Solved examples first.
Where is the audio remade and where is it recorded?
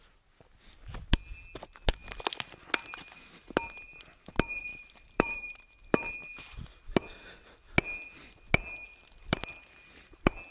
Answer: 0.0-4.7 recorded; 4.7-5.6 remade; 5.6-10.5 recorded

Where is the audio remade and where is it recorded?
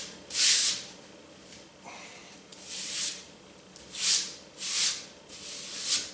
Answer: 0.0-6.1 recorded